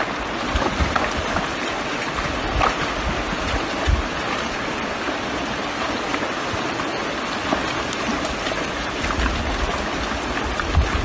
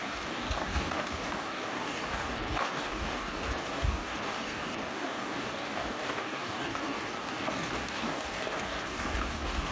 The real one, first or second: first